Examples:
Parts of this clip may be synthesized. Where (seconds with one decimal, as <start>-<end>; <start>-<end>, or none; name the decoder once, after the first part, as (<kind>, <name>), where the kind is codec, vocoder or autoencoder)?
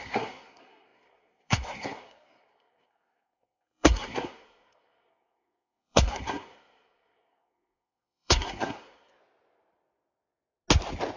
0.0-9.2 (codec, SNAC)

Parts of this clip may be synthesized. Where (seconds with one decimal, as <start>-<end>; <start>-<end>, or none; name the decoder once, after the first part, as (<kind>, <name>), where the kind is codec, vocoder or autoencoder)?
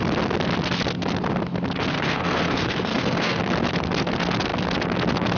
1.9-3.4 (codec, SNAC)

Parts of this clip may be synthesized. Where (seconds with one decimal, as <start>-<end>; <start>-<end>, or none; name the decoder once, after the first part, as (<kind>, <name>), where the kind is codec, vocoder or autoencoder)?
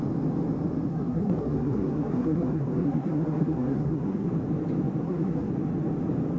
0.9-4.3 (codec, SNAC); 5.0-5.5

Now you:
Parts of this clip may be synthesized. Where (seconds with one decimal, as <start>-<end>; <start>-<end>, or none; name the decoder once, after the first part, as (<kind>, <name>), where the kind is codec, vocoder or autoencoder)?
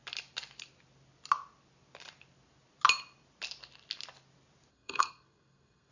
4.7-5.9 (codec, SNAC)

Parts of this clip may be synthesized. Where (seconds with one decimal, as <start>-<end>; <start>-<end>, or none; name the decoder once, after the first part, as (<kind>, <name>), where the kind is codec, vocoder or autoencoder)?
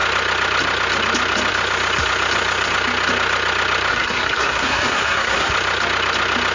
3.9-5.5 (codec, SNAC)